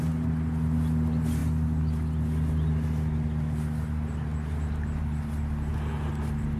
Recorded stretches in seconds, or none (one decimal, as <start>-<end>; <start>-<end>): 0.0-6.6